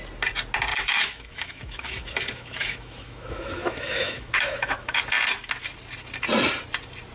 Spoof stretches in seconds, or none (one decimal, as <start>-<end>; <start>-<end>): 0.7-5.0